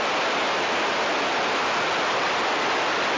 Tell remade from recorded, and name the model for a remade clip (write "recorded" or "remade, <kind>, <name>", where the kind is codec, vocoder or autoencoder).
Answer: recorded